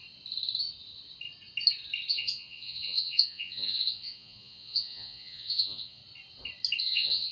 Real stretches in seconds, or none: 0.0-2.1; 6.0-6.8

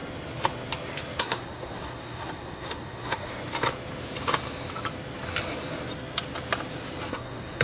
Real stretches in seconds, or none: 0.0-1.2; 3.3-7.1

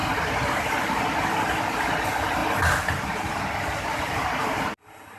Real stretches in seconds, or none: 0.0-5.2

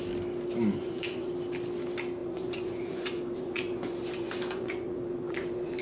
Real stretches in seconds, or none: 0.0-0.8; 1.3-2.2

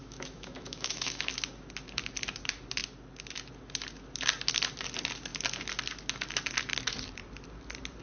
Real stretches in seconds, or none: 1.3-8.0

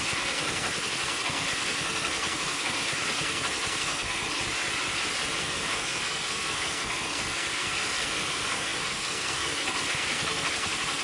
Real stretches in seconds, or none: 4.2-5.4

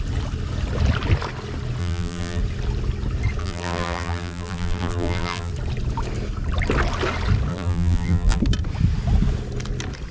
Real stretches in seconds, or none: 0.0-1.8; 2.4-3.4; 5.5-7.5; 8.4-10.1